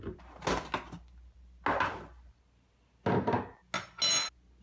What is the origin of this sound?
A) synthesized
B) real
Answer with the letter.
B